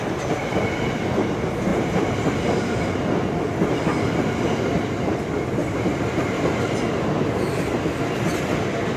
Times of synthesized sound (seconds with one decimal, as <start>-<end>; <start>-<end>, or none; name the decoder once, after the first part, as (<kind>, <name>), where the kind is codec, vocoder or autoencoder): 1.7-2.4 (vocoder, BigVGAN v2); 5.6-6.8